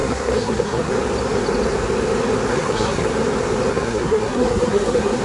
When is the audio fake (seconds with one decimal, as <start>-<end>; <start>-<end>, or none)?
0.0-0.9; 2.5-3.1; 3.7-5.2